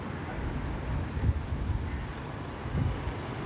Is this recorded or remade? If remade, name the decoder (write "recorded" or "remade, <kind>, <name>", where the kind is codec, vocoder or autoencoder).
recorded